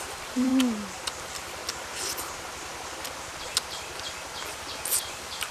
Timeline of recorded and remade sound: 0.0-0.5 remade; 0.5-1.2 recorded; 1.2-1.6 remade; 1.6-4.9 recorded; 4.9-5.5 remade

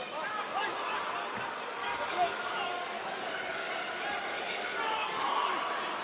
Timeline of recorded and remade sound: 0.0-1.8 recorded; 1.8-3.7 remade; 3.7-4.3 recorded; 4.3-5.5 remade; 5.5-6.0 recorded

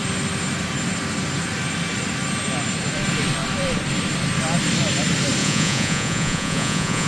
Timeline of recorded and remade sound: 0.0-5.4 recorded; 5.4-7.1 remade

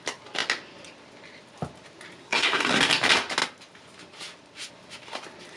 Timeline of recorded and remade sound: 0.0-2.2 recorded; 2.2-2.8 remade; 2.8-5.6 recorded

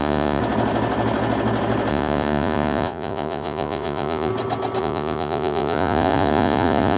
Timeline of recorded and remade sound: 0.0-0.4 remade; 0.4-1.9 recorded; 1.9-4.3 remade; 4.3-4.8 recorded; 4.8-7.0 remade

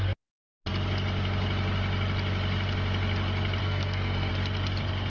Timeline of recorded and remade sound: 0.0-3.6 recorded; 3.6-4.3 remade; 4.3-5.1 recorded

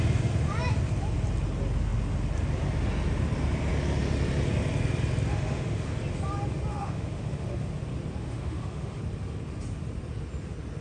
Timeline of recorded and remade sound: 0.0-5.3 recorded; 5.3-5.9 remade; 5.9-6.7 recorded; 6.7-7.7 remade; 7.7-8.2 recorded; 8.2-9.0 remade; 9.0-10.8 recorded